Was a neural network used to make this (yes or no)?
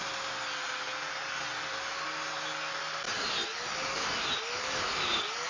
no